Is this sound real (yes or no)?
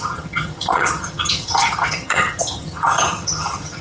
no